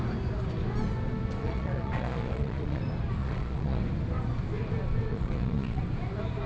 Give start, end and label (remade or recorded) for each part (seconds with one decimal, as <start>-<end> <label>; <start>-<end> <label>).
0.0-1.4 recorded; 1.4-2.8 remade; 2.8-3.2 recorded; 3.2-3.8 remade; 3.8-5.1 recorded; 5.1-5.8 remade; 5.8-6.5 recorded